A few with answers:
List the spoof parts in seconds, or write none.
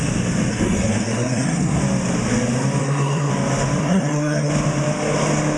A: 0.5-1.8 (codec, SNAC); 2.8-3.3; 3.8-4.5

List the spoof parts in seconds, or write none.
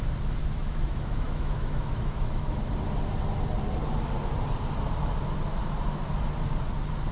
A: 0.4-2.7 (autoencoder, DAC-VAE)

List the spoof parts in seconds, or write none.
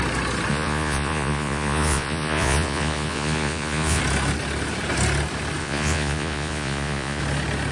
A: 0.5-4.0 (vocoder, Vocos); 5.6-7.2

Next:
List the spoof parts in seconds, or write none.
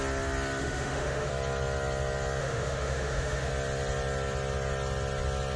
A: 0.6-1.3 (autoencoder, DAC-VAE); 2.4-3.5